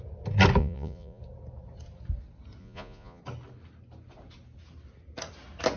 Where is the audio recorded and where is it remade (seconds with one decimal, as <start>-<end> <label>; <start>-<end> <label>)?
0.0-0.6 recorded; 0.6-1.2 remade; 1.2-2.6 recorded; 2.6-3.2 remade; 3.2-5.8 recorded